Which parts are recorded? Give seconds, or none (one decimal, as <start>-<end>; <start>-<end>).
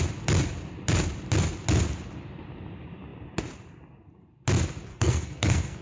0.0-4.9